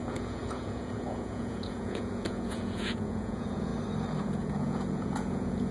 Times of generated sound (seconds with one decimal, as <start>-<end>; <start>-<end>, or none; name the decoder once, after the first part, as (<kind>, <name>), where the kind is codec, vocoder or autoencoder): 0.0-3.7 (vocoder, Vocos); 4.2-5.7